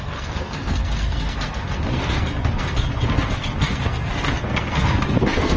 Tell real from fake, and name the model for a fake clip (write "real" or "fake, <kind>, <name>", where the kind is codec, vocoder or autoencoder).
fake, codec, SNAC